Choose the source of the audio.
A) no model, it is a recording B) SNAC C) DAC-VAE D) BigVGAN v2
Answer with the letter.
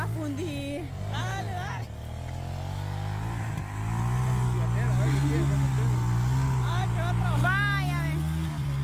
A